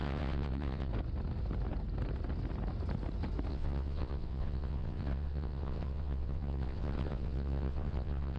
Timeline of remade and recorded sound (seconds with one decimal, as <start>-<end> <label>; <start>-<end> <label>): 0.0-0.9 remade; 0.9-3.5 recorded; 3.5-8.4 remade